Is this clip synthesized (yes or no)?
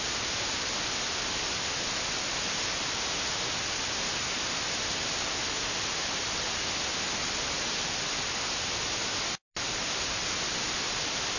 no